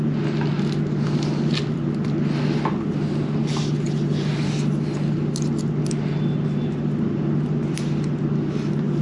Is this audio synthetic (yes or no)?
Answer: no